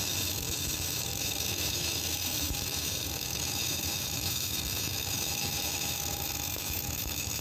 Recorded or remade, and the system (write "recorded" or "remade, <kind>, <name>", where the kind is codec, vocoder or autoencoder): remade, autoencoder, DAC-VAE